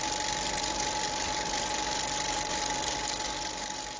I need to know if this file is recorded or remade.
remade